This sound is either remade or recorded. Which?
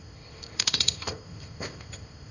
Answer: remade